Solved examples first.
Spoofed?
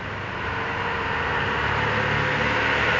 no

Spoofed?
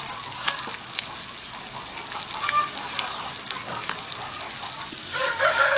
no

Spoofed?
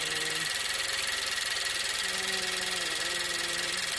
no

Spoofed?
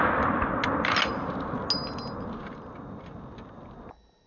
no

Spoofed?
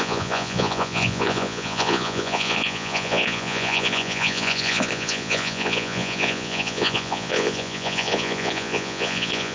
yes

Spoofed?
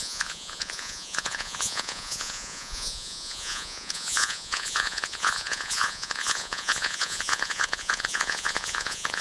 yes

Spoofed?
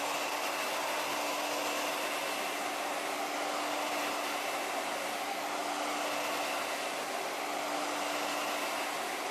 no